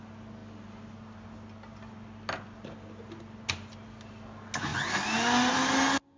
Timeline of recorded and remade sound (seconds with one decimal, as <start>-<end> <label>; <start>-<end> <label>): 0.0-6.2 recorded

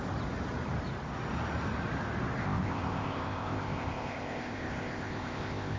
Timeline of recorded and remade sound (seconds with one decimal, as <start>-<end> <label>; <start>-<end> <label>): 0.0-2.4 recorded; 2.4-5.8 remade